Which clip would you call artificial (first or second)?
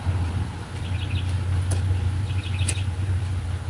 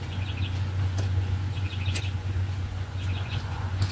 second